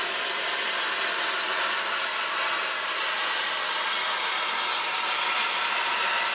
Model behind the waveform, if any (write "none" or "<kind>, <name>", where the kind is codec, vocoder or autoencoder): none